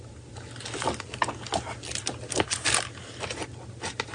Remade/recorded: recorded